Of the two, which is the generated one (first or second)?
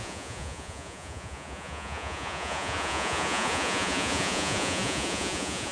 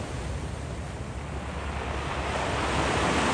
first